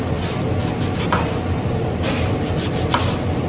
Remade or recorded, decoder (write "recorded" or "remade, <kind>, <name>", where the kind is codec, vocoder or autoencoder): recorded